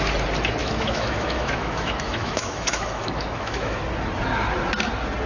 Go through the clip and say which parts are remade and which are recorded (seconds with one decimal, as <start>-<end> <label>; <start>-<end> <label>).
0.0-0.6 recorded; 0.6-3.8 remade; 3.8-5.3 recorded